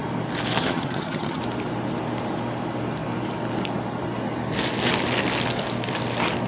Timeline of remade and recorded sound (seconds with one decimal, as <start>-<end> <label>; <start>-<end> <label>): 0.0-0.6 recorded; 0.6-1.4 remade; 1.4-6.5 recorded